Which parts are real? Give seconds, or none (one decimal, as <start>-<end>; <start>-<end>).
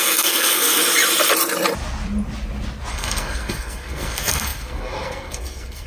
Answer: 0.8-2.9